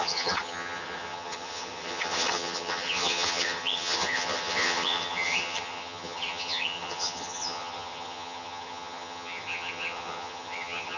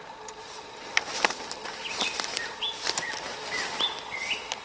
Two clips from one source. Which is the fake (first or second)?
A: first